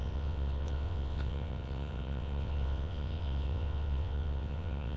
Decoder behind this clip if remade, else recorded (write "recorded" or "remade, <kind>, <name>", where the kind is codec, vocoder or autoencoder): remade, vocoder, WaveNeXt